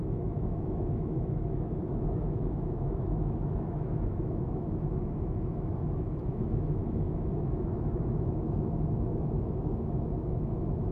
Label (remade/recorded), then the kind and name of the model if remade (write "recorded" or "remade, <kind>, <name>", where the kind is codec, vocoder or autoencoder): remade, autoencoder, DAC-VAE